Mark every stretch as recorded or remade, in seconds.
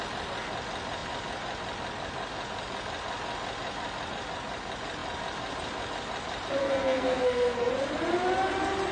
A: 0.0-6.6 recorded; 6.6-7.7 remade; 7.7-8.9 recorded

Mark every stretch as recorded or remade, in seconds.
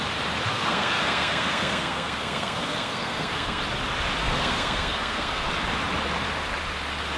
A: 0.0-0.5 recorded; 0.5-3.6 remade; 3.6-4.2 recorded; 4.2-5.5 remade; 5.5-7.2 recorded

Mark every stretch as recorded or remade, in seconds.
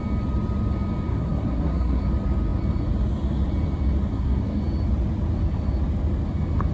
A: 0.0-1.1 recorded; 1.1-2.0 remade; 2.0-4.1 recorded; 4.1-4.6 remade; 4.6-6.7 recorded